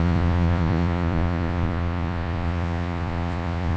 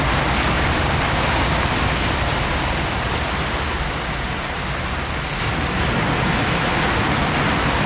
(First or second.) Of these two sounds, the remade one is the first